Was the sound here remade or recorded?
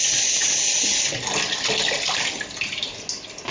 recorded